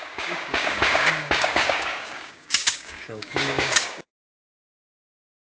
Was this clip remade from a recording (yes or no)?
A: yes